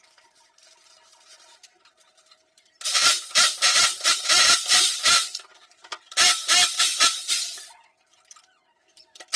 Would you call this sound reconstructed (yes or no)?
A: yes